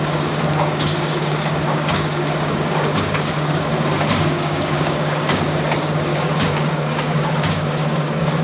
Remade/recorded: remade